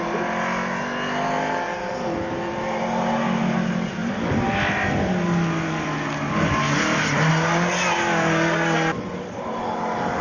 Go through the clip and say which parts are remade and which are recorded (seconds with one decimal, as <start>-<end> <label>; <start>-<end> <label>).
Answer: 0.0-10.2 recorded